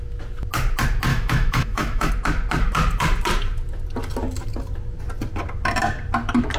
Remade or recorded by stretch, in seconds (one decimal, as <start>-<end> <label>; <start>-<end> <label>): 0.0-1.1 recorded; 1.1-2.1 remade; 2.1-6.6 recorded